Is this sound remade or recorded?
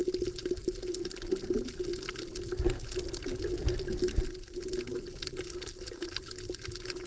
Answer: recorded